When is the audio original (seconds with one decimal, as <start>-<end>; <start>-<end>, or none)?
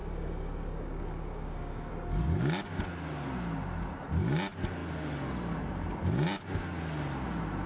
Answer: 1.9-7.7